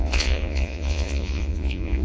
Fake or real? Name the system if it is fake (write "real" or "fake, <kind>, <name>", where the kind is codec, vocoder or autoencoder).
fake, vocoder, Vocos